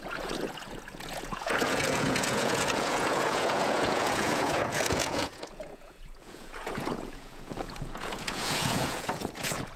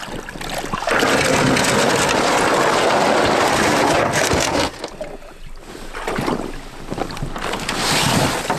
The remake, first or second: first